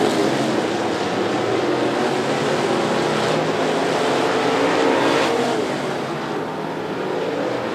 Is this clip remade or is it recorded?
recorded